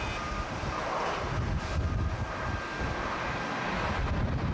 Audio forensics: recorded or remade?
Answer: recorded